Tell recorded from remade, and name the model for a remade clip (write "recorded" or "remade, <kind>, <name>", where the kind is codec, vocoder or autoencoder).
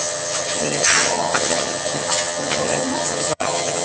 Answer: remade, vocoder, HiFi-GAN